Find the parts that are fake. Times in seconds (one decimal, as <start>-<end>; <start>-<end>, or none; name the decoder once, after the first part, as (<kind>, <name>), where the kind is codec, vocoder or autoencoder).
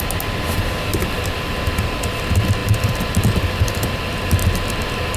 0.9-1.6 (vocoder, BigVGAN v2); 2.6-4.0